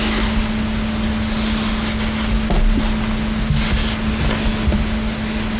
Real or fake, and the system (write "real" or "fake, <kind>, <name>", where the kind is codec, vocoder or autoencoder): real